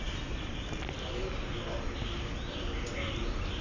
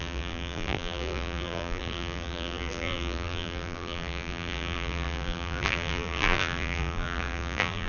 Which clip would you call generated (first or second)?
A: second